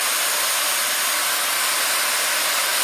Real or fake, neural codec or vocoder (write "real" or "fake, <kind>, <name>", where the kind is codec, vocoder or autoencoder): real